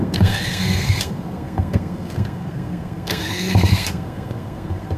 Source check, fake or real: fake